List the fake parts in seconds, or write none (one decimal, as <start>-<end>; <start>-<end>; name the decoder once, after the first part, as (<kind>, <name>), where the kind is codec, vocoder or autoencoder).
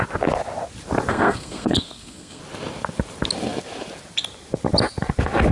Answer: 1.1-2.4 (codec, SNAC)